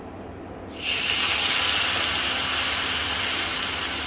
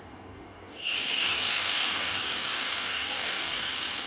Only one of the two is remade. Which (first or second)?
second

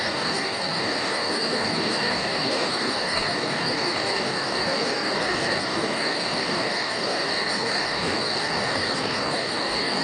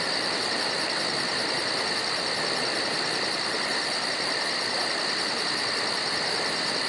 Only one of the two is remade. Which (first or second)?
first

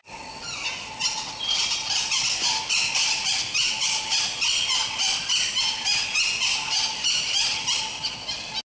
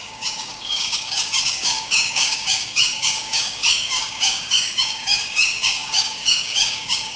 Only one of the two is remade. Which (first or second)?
second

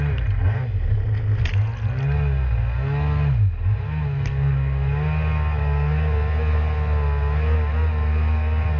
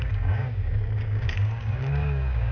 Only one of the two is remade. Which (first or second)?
second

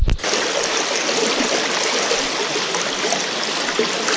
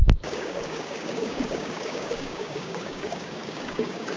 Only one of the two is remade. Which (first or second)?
second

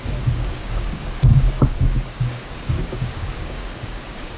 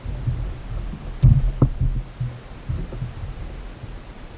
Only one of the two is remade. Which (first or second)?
first